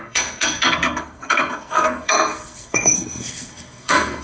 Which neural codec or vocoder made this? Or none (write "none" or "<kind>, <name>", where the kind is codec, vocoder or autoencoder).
codec, SNAC